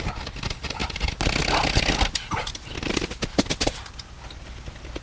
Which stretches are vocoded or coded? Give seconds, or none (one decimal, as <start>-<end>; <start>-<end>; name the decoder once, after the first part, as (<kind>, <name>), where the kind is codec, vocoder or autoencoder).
none